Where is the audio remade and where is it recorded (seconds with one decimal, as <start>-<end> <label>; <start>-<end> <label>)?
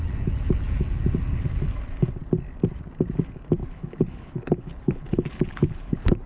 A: 0.0-3.6 recorded; 3.6-6.3 remade